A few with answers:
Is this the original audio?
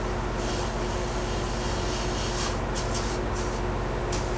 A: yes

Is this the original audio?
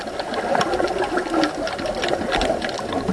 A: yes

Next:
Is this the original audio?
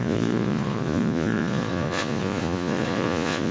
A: no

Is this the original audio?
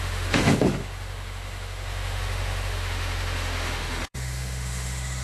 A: no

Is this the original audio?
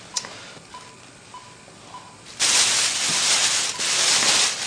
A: yes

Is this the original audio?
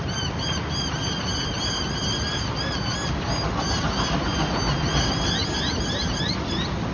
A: yes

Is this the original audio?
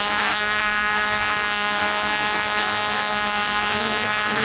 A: no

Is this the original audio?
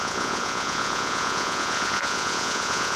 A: no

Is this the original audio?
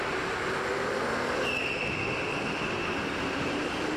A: yes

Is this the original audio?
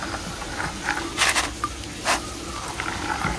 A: yes